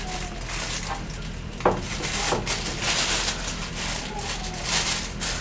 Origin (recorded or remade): recorded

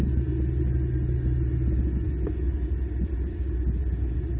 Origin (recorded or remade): recorded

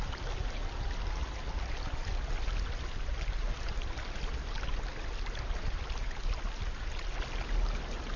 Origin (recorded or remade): recorded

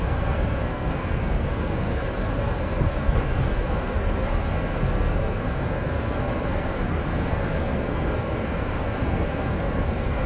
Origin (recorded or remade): remade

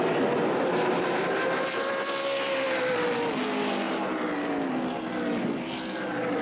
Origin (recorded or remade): recorded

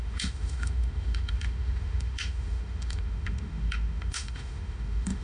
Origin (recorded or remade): remade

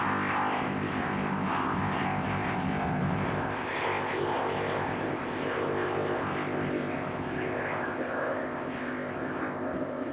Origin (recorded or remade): remade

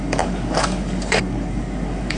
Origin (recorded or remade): remade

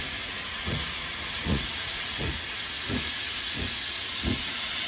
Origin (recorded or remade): remade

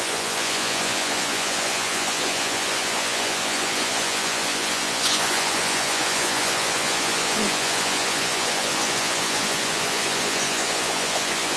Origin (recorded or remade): remade